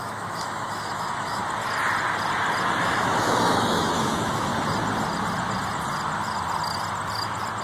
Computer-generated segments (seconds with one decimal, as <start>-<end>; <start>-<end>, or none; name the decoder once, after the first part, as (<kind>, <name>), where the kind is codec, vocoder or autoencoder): 0.0-1.4 (autoencoder, DAC-VAE); 2.8-4.5